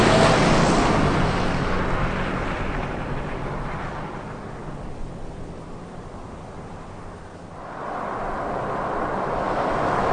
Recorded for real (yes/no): yes